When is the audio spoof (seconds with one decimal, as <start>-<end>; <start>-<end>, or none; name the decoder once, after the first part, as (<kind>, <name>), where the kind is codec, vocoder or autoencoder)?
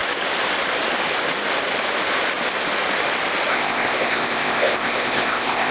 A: 3.5-5.7 (codec, ZipCodec)